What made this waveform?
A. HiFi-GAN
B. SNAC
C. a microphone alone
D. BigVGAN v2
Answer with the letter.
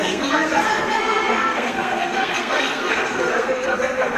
B